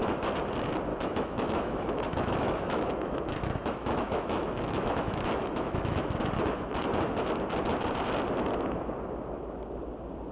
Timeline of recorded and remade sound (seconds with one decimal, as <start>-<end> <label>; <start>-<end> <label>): 0.0-0.9 recorded; 0.9-6.0 remade; 6.0-10.3 recorded